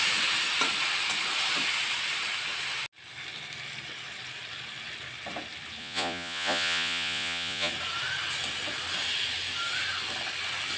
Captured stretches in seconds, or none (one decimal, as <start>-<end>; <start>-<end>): 0.0-5.8; 7.7-10.8